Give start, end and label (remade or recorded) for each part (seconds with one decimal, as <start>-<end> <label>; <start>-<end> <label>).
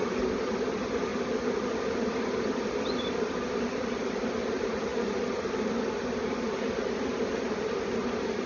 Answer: 0.0-8.5 recorded